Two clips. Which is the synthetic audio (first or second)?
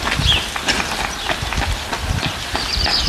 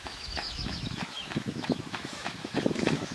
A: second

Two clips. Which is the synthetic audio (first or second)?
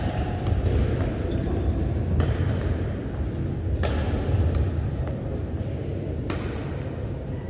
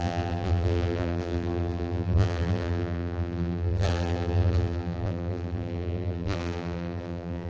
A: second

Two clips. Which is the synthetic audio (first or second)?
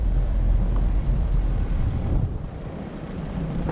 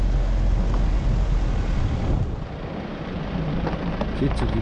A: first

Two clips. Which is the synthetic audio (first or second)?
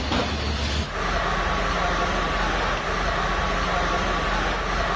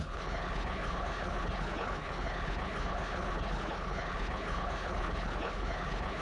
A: second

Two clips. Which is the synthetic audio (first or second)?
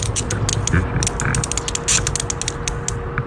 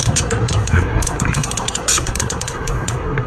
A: second